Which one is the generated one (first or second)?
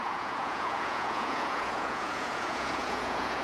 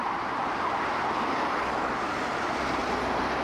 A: first